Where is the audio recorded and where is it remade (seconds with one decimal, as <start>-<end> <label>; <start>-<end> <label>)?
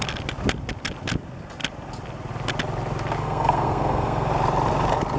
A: 0.0-3.2 recorded; 3.2-4.3 remade; 4.3-5.2 recorded